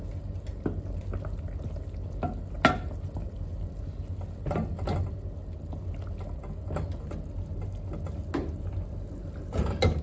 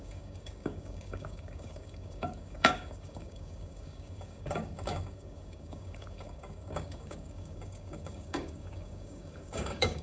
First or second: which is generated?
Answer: second